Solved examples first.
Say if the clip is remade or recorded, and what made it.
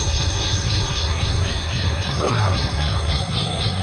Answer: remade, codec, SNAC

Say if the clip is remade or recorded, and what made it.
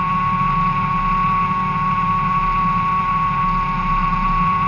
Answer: recorded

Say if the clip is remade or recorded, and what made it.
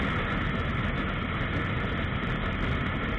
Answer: recorded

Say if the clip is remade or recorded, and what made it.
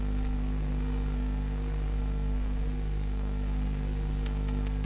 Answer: remade, codec, SNAC